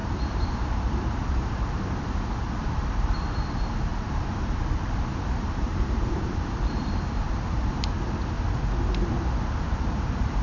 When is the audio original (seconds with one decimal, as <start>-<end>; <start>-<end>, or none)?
1.7-3.9; 7.6-10.4